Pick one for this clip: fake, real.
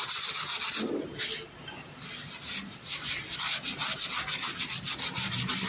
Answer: real